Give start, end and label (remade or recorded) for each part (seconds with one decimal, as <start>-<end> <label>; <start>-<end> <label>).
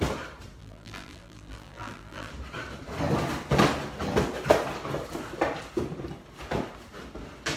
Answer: 0.0-0.6 recorded; 0.6-2.3 remade; 2.3-7.6 recorded